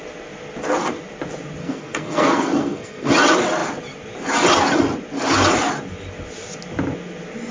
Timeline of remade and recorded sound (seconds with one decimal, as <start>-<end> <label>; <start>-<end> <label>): 0.0-1.6 recorded; 1.6-3.1 remade; 3.1-7.5 recorded